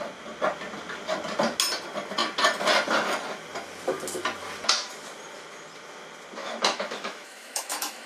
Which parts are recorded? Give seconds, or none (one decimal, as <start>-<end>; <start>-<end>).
0.0-6.4